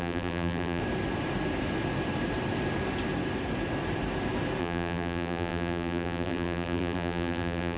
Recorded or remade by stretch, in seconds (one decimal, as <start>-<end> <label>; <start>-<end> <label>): 0.0-0.8 remade; 0.8-4.6 recorded; 4.6-7.8 remade